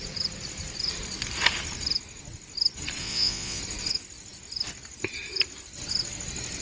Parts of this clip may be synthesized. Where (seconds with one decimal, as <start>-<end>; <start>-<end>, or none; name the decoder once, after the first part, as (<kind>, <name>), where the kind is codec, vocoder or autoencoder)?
3.0-3.6 (vocoder, Vocos)